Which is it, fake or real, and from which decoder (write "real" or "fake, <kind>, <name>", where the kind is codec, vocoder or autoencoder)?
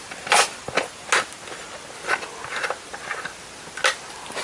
real